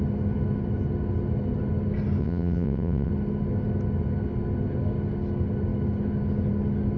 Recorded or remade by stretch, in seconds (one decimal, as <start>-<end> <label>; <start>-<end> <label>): 0.0-2.2 recorded; 2.2-3.1 remade; 3.1-7.0 recorded

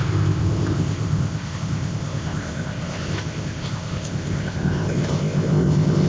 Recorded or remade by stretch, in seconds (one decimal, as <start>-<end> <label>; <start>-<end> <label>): 0.0-6.1 remade

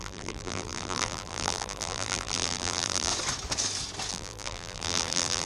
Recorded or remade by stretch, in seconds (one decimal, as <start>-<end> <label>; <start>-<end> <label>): 0.0-3.1 remade; 3.1-4.1 recorded; 4.1-5.5 remade

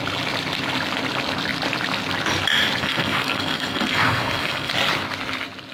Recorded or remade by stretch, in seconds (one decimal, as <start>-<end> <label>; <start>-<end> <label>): 0.0-2.8 recorded; 2.8-4.7 remade; 4.7-5.7 recorded

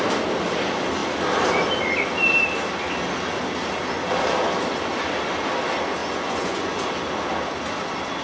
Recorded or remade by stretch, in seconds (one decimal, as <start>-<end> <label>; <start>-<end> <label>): 0.0-6.0 recorded; 6.0-6.8 remade; 6.8-8.2 recorded

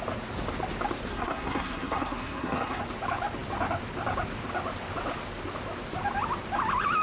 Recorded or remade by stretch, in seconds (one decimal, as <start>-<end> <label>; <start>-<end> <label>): 0.0-1.1 recorded; 1.1-2.8 remade; 2.8-7.0 recorded

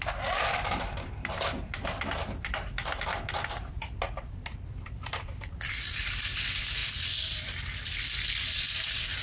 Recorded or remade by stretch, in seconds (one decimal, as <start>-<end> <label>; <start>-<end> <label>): 0.0-6.8 remade; 6.8-8.5 recorded; 8.5-9.2 remade